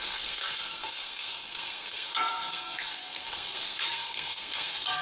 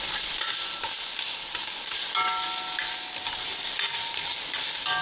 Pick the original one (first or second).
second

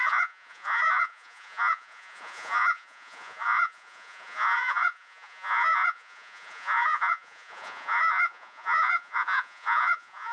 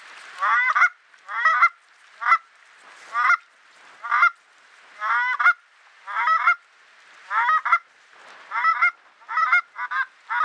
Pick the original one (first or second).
second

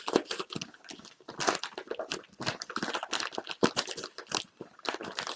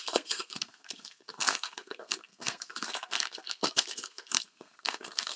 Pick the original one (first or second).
first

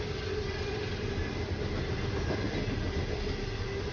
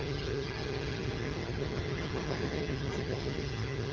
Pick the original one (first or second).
first